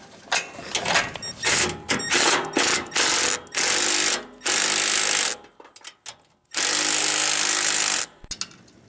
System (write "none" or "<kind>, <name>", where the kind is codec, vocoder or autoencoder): none